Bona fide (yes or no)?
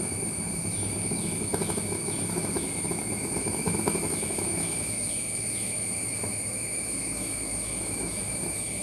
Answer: no